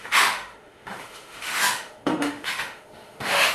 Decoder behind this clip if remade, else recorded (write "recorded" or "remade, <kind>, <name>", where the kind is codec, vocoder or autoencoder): remade, autoencoder, DAC-VAE